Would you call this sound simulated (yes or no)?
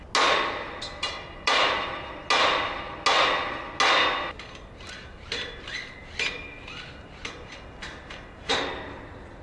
no